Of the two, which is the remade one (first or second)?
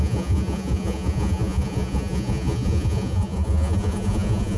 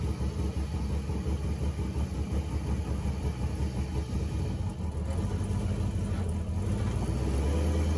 first